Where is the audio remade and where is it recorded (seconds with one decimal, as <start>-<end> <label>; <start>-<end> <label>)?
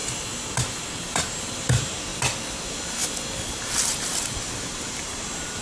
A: 0.0-0.6 recorded; 0.6-2.1 remade; 2.1-2.6 recorded; 2.6-3.0 remade; 3.0-3.9 recorded; 3.9-5.6 remade